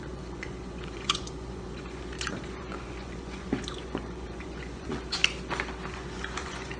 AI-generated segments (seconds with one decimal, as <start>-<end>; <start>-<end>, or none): 0.0-5.2; 5.9-6.8